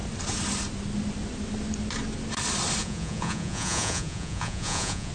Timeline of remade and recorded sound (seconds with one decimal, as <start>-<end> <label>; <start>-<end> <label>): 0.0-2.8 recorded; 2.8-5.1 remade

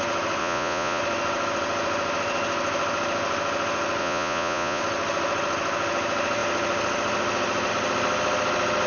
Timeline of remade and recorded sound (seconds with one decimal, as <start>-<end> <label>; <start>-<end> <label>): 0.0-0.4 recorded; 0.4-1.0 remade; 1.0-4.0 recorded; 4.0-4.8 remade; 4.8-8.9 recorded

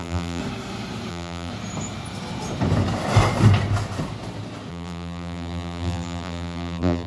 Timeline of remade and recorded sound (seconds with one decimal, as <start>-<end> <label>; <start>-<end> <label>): 0.0-0.4 remade; 0.4-1.1 recorded; 1.1-1.5 remade; 1.5-4.7 recorded; 4.7-7.1 remade

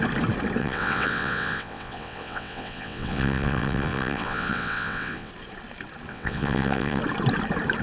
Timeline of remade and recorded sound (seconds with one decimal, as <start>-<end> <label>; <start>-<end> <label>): 0.0-0.6 recorded; 0.6-5.3 remade; 5.3-6.1 recorded; 6.1-7.0 remade; 7.0-7.8 recorded

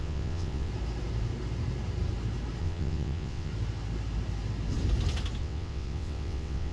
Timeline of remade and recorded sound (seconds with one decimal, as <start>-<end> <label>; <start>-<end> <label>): 0.0-0.7 remade; 0.7-2.6 recorded; 2.6-3.5 remade; 3.5-5.4 recorded; 5.4-6.7 remade

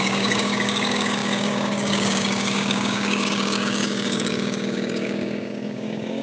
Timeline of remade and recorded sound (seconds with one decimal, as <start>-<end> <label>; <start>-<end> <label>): 0.0-6.2 remade

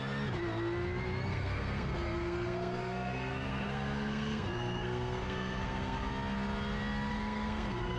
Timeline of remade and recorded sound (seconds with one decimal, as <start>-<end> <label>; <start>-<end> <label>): 0.0-1.3 recorded; 1.3-6.1 remade; 6.1-7.1 recorded; 7.1-8.0 remade